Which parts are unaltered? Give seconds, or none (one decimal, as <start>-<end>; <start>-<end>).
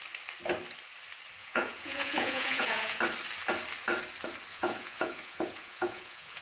0.0-1.4; 3.0-4.5